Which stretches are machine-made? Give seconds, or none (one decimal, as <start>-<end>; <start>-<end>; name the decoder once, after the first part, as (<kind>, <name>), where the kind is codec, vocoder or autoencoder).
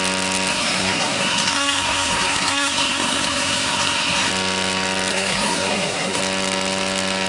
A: 0.5-4.3 (codec, SNAC); 5.1-6.2